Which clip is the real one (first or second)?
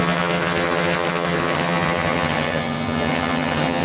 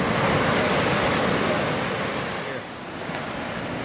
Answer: second